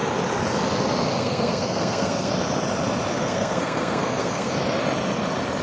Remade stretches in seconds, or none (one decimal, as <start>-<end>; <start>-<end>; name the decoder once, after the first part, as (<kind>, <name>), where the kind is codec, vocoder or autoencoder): 1.1-2.3 (codec, SNAC); 3.1-4.5